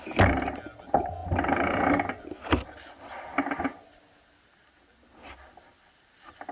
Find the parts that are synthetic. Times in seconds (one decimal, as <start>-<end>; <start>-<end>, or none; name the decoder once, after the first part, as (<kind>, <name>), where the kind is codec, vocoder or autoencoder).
none